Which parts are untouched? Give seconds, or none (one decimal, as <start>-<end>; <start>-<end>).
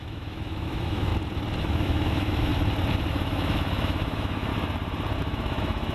1.1-1.6; 2.5-3.1; 4.5-5.2